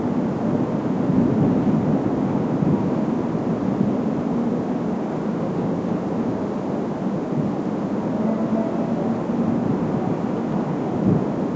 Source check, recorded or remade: recorded